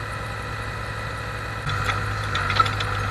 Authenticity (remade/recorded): recorded